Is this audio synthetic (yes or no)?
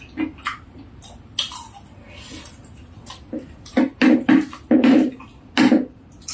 no